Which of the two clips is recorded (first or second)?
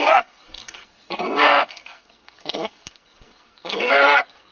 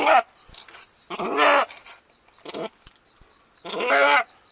second